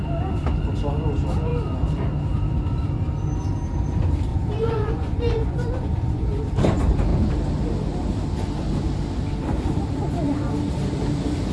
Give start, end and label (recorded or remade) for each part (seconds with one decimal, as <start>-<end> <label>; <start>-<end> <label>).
0.0-4.3 recorded; 4.3-6.3 remade; 6.3-11.5 recorded